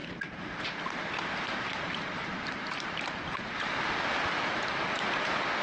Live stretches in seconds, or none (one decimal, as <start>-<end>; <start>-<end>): 0.8-1.3; 3.7-5.6